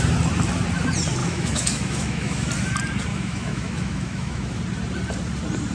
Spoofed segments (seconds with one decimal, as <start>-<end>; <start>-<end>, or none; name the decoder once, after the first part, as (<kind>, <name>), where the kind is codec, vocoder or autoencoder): 1.2-2.5 (autoencoder, DAC-VAE); 3.1-4.6

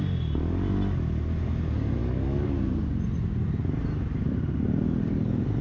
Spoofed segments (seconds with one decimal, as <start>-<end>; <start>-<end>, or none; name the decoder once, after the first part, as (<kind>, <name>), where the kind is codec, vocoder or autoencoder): 2.0-2.5 (codec, DAC)

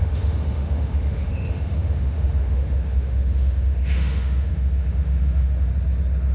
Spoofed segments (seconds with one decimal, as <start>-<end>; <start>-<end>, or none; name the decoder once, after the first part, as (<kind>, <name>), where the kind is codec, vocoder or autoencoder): 0.0-5.7 (autoencoder, DAC-VAE)

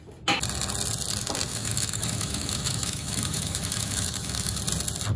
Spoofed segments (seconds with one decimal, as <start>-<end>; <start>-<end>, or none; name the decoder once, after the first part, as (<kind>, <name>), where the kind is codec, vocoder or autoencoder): 1.5-4.6 (autoencoder, DAC-VAE)

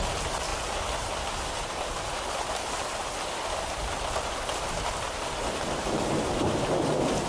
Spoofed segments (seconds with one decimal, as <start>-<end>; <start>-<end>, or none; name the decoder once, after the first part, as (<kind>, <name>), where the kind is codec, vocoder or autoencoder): none

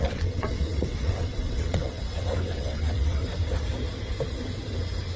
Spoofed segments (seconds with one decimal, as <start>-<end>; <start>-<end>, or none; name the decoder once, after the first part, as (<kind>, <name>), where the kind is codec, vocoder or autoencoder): 0.0-3.2 (vocoder, WaveNeXt)

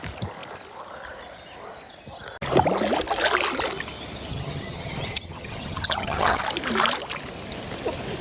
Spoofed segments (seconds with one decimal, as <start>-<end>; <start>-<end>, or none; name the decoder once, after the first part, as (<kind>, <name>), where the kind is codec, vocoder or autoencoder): 4.3-6.4 (vocoder, HiFi-GAN)

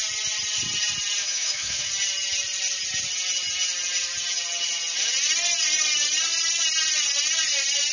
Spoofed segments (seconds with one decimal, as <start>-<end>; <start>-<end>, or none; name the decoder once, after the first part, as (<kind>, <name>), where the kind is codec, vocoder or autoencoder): 1.2-1.9 (autoencoder, DAC-VAE)